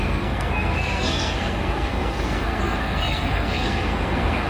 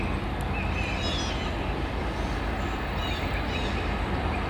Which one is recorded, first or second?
second